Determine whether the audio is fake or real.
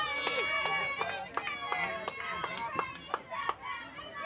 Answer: real